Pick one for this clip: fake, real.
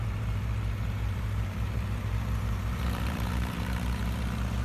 fake